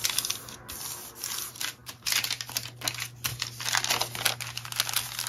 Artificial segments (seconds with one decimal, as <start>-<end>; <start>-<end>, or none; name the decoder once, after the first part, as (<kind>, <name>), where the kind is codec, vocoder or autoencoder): none